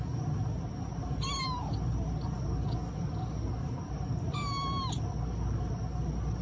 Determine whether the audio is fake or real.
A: real